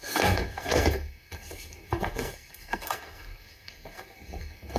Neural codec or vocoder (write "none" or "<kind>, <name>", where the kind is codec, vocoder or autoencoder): codec, SNAC